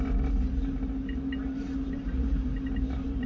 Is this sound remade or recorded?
recorded